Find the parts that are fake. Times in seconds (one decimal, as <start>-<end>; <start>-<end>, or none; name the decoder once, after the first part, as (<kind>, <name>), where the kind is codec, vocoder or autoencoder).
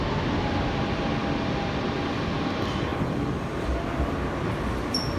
none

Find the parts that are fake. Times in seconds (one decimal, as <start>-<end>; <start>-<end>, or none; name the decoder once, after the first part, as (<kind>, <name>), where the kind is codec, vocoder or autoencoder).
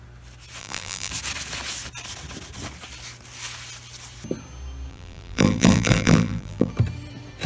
0.6-1.1 (vocoder, BigVGAN v2); 4.9-6.7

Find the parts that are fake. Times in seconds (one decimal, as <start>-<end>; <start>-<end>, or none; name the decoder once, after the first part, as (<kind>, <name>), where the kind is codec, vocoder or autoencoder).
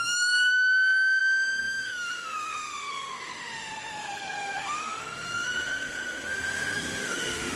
0.0-7.6 (autoencoder, DAC-VAE)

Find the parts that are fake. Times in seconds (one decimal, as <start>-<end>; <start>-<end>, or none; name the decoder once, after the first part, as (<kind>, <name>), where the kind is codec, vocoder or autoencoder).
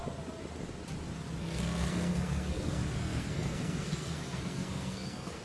1.4-5.4 (codec, SNAC)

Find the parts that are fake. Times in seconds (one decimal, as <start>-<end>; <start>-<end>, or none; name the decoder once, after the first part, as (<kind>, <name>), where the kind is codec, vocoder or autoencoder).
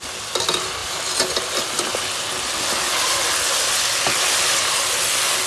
none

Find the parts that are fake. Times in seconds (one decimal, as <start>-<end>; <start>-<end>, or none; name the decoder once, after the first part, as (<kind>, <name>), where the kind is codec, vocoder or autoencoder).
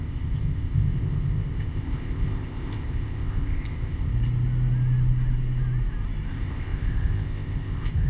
0.0-4.1 (codec, ZipCodec); 6.3-8.1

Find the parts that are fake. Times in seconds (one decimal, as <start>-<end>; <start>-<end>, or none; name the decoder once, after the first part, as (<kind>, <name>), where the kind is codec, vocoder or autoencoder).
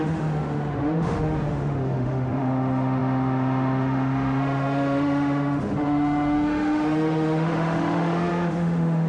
0.0-9.1 (autoencoder, DAC-VAE)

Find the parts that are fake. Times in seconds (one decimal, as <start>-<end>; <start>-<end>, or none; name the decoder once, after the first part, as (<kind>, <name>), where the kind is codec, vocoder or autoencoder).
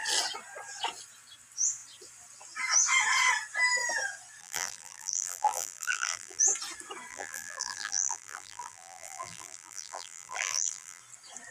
4.4-6.4 (vocoder, BigVGAN v2); 7.1-11.0